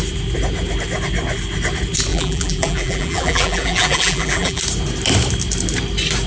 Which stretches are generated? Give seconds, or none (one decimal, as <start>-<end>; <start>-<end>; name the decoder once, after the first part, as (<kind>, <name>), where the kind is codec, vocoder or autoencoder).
2.1-4.6 (vocoder, BigVGAN v2)